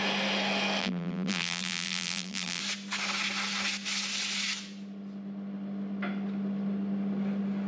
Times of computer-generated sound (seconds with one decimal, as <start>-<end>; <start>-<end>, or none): 0.8-2.6